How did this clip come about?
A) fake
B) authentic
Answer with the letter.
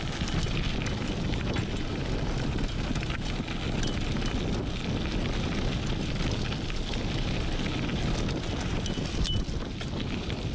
B